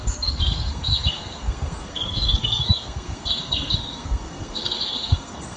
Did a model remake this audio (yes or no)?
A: yes